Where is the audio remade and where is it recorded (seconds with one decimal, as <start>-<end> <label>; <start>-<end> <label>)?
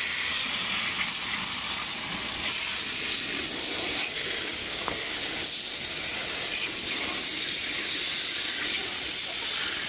0.0-4.6 recorded; 4.6-5.1 remade; 5.1-9.9 recorded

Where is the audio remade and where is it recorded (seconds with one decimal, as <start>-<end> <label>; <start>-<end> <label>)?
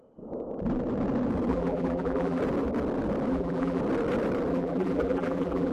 0.0-1.5 recorded; 1.5-2.4 remade; 2.4-3.3 recorded; 3.3-3.8 remade; 3.8-4.5 recorded; 4.5-5.7 remade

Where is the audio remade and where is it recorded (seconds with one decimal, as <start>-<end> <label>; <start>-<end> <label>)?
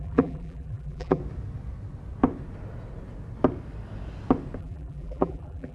0.0-1.2 remade; 1.2-4.6 recorded; 4.6-5.7 remade